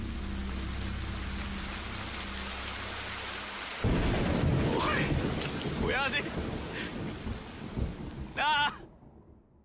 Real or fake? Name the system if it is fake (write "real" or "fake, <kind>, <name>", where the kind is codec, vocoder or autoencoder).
real